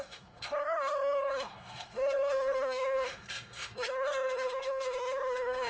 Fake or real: fake